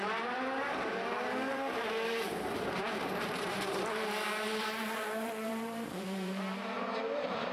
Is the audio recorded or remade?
remade